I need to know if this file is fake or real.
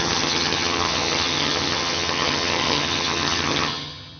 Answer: fake